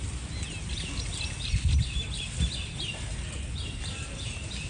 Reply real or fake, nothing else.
real